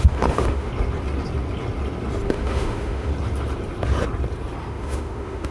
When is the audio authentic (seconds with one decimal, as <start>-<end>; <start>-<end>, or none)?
0.7-2.3; 3.1-4.7